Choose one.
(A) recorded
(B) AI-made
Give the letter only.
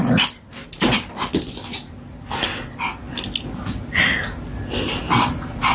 A